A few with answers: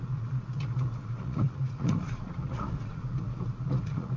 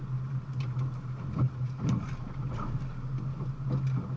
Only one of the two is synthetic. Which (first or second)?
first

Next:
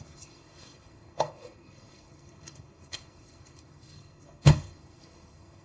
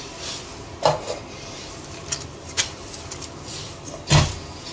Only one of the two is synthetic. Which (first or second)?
first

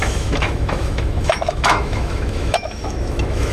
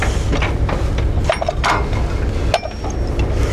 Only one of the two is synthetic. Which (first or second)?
first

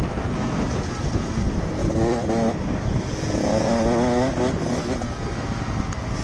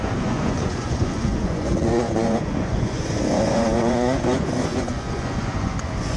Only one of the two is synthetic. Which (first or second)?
second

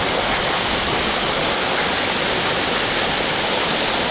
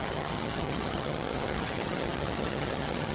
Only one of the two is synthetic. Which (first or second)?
second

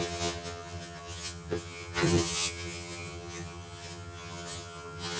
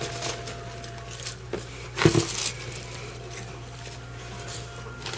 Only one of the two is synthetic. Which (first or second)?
first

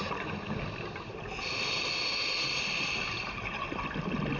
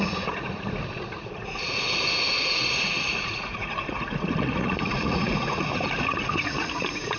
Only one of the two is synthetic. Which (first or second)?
second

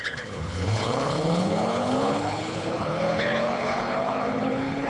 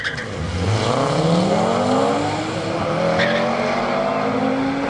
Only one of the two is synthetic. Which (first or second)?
first